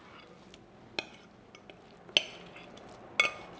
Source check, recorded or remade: recorded